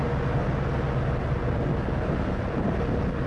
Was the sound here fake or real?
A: real